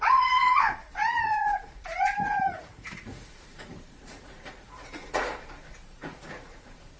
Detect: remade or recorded remade